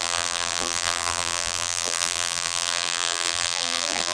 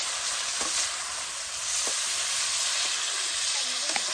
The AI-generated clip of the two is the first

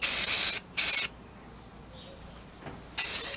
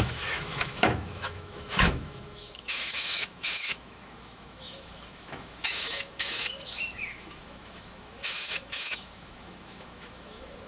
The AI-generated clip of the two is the second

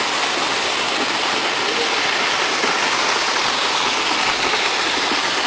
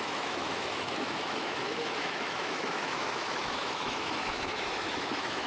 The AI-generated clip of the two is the second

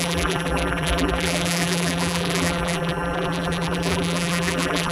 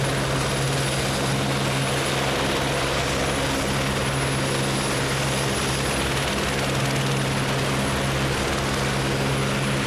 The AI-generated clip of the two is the first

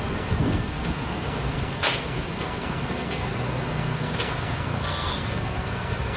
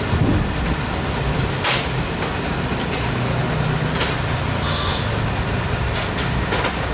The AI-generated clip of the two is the first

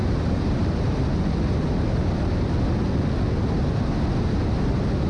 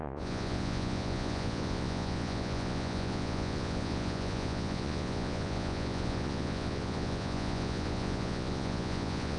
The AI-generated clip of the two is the second